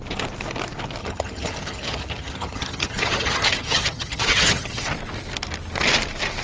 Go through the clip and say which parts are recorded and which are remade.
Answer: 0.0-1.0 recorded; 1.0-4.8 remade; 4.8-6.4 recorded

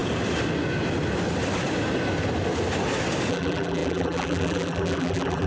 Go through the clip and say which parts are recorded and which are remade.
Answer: 0.0-3.3 recorded; 3.3-5.5 remade

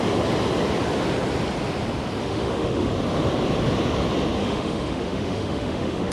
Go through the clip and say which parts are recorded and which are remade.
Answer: 0.0-2.2 recorded; 2.2-2.9 remade; 2.9-4.4 recorded; 4.4-6.1 remade

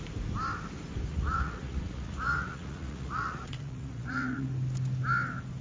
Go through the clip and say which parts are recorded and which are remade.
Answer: 0.0-1.1 recorded; 1.1-4.5 remade; 4.5-5.6 recorded

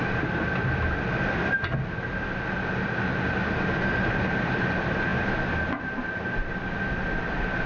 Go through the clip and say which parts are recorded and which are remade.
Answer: 0.0-7.7 recorded

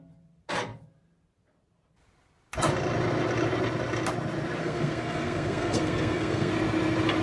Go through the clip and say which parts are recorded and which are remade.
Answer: 0.0-4.6 recorded; 4.6-6.5 remade; 6.5-7.2 recorded

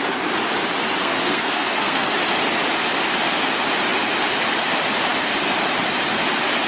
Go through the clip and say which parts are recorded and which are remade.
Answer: 0.0-1.0 recorded; 1.0-2.1 remade; 2.1-6.7 recorded

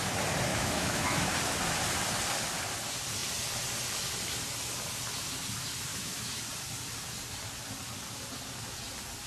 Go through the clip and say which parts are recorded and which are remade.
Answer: 0.0-0.5 recorded; 0.5-1.3 remade; 1.3-5.9 recorded; 5.9-6.4 remade; 6.4-9.3 recorded